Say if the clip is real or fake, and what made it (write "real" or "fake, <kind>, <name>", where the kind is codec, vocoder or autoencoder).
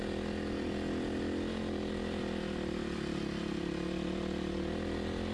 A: real